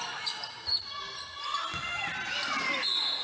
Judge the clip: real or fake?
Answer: real